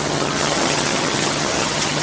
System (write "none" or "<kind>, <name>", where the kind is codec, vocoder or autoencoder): vocoder, HiFi-GAN